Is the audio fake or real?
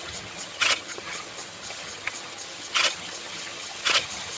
fake